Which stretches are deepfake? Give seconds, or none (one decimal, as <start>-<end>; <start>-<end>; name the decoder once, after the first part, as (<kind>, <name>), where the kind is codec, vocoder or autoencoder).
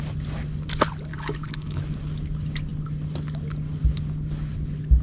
1.1-1.8 (codec, HILCodec)